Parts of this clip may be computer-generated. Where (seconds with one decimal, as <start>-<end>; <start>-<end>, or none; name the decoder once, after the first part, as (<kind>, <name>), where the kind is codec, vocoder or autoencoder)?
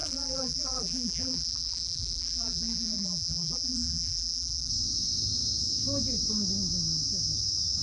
0.0-4.7 (vocoder, BigVGAN v2)